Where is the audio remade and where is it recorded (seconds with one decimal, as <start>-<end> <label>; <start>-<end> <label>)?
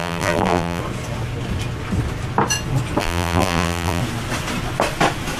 0.0-0.8 remade; 0.8-3.0 recorded; 3.0-4.0 remade; 4.0-5.4 recorded